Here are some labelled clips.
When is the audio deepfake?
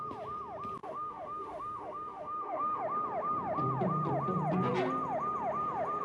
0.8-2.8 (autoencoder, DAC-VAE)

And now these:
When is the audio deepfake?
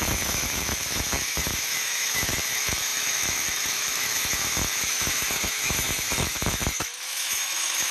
0.0-7.9 (autoencoder, DAC-VAE)